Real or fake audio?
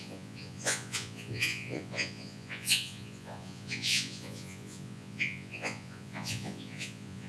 fake